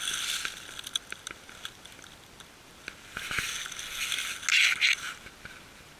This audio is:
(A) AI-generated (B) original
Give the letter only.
B